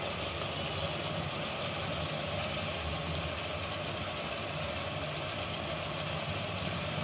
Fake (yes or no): no